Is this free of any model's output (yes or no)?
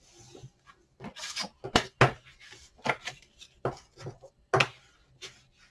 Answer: yes